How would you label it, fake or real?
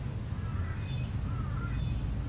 real